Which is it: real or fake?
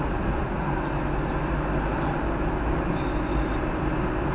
real